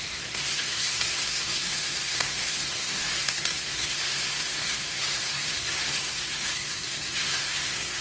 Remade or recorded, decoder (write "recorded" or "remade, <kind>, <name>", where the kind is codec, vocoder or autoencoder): remade, codec, SNAC